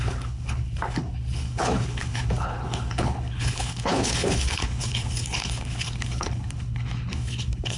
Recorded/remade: remade